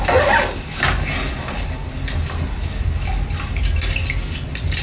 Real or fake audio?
real